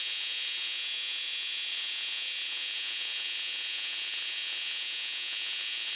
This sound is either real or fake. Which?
fake